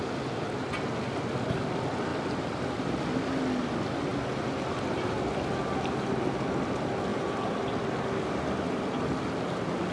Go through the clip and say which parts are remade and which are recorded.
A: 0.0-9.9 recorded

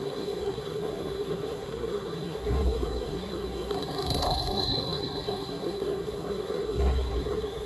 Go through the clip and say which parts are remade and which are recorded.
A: 0.0-7.7 remade

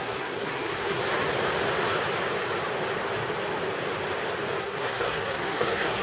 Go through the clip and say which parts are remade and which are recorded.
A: 0.0-1.0 remade; 1.0-4.6 recorded; 4.6-6.0 remade

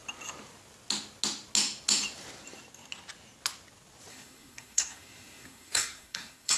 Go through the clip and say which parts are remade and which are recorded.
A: 0.0-4.1 recorded; 4.1-6.6 remade